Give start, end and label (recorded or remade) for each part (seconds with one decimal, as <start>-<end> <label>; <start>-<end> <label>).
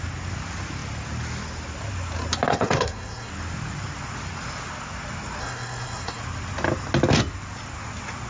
0.0-2.5 recorded; 2.5-3.3 remade; 3.3-5.4 recorded; 5.4-6.2 remade; 6.2-8.3 recorded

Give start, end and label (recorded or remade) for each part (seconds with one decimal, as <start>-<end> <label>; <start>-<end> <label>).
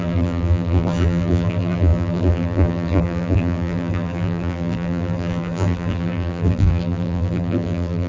0.0-8.1 remade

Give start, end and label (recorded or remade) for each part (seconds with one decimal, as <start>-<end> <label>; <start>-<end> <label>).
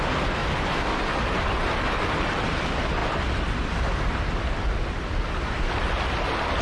0.0-6.6 recorded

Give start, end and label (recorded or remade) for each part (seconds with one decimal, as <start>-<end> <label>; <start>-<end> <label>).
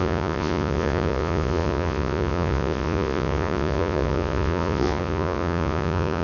0.0-6.2 remade